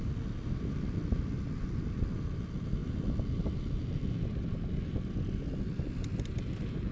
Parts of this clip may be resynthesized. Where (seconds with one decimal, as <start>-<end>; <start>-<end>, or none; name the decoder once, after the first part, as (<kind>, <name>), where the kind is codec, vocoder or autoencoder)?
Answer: none